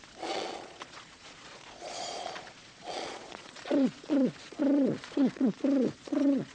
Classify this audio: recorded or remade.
remade